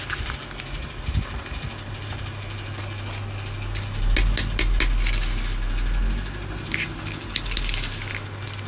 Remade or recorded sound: recorded